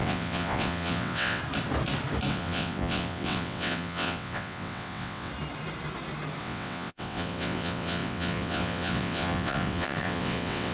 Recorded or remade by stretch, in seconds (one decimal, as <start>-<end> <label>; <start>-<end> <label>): 0.0-1.4 remade; 1.4-2.3 recorded; 2.3-5.3 remade; 5.3-6.4 recorded; 6.4-10.7 remade